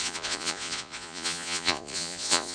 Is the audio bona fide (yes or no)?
no